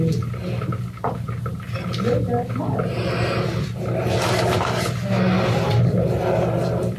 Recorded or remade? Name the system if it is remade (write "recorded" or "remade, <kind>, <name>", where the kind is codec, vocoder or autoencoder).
recorded